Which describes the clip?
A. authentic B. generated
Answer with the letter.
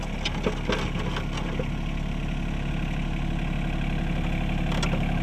A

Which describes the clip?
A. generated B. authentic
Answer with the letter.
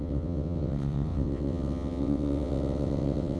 A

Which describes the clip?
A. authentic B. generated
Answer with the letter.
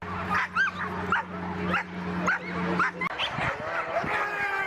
A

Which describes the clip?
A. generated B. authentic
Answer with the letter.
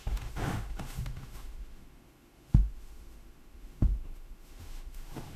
A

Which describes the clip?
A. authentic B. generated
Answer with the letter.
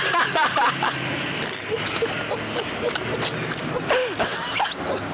A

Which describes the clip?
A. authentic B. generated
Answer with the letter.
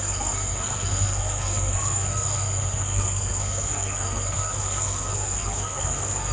B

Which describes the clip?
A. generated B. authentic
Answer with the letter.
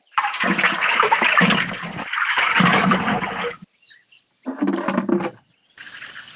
B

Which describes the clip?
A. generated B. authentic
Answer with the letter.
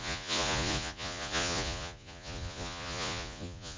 A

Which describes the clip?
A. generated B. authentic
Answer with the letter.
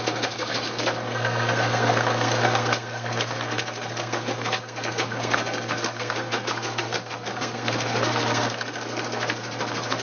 A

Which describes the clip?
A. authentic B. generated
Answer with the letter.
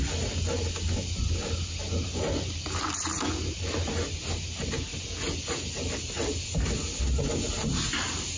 A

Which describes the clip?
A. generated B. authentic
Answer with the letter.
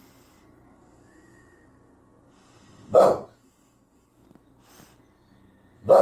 B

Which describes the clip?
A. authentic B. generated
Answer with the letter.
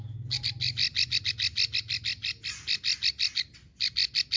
A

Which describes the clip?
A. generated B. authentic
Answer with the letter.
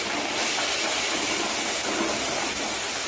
B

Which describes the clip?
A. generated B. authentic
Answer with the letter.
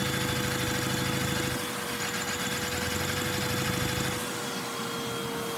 B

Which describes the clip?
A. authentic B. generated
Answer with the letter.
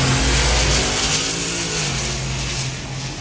A